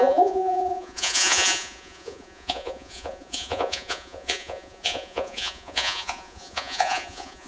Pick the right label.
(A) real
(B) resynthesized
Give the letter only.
B